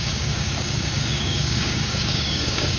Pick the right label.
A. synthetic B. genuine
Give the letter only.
A